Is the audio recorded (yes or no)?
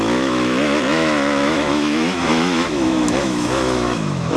no